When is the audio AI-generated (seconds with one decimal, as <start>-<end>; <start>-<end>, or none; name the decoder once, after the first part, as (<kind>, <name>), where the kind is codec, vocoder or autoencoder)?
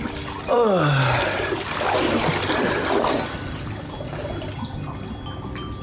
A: none